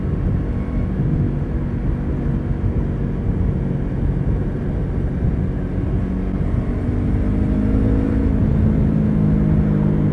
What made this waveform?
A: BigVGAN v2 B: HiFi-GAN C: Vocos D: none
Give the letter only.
D